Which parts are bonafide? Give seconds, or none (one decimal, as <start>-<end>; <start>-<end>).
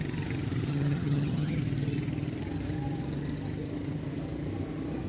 0.0-0.7; 1.6-5.1